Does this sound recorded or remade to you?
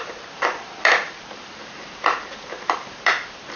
remade